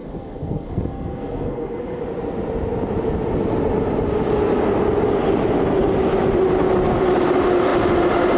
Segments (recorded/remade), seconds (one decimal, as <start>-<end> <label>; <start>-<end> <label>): 0.0-2.0 remade; 2.0-8.4 recorded